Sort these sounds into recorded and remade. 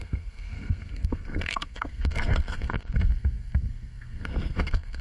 remade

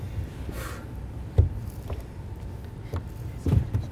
recorded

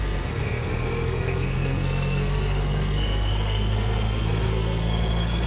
remade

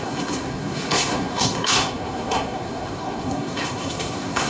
remade